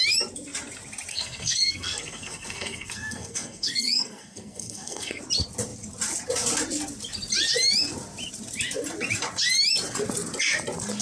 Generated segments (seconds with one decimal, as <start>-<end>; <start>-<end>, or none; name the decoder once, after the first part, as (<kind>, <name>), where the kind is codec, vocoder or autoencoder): 1.1-5.2 (codec, SNAC)